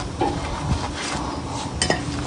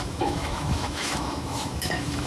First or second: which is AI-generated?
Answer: second